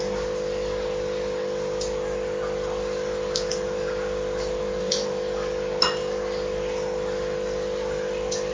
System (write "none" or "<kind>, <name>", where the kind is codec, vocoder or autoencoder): none